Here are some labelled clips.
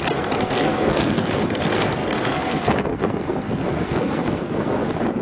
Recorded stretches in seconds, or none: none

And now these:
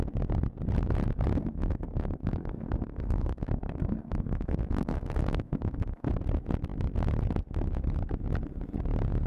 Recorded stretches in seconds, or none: 0.0-1.4; 6.1-9.3

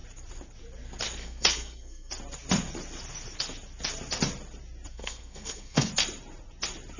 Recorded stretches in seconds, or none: 0.0-1.2; 2.1-4.9; 5.9-7.0

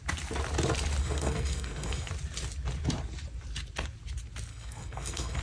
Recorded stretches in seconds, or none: 0.0-1.0; 2.1-4.5

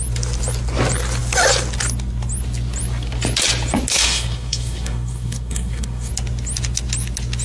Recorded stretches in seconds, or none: 0.0-3.9; 6.1-7.4

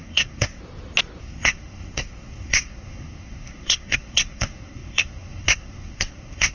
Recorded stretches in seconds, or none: 0.6-1.2

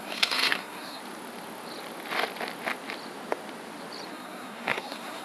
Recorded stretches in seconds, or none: 1.0-4.1